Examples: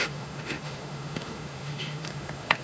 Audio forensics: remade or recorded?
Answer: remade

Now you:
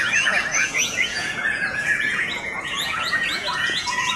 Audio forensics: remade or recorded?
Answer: remade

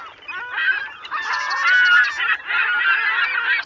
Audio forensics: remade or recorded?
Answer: recorded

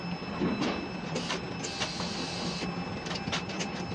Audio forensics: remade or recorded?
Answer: recorded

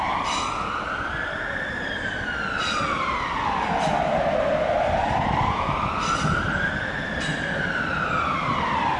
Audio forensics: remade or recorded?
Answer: recorded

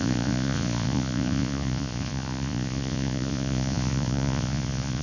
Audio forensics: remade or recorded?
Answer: remade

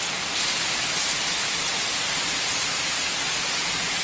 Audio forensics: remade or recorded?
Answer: recorded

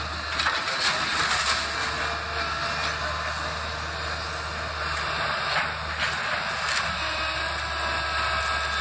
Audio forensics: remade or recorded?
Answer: recorded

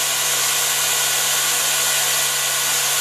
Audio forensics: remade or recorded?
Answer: recorded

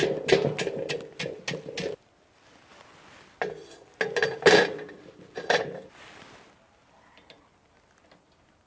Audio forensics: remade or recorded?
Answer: recorded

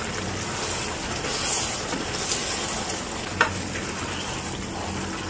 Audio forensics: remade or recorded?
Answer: recorded